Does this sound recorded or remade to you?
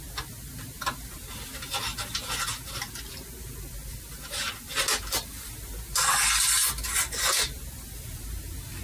recorded